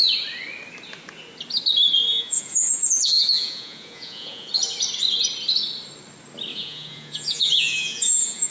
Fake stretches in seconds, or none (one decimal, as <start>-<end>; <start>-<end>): 2.1-4.5; 6.5-8.5